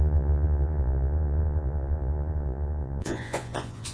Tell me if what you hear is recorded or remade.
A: remade